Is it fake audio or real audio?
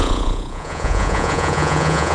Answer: fake